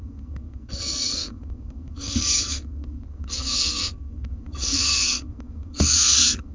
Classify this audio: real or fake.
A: fake